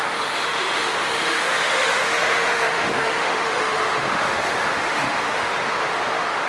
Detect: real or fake fake